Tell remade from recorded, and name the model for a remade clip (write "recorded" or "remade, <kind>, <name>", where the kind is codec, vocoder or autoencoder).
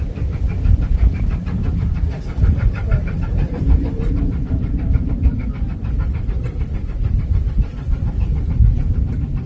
remade, vocoder, BigVGAN v2